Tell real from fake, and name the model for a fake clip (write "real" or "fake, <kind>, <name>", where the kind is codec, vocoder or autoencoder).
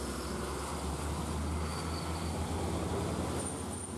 real